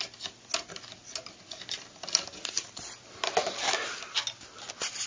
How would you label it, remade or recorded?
recorded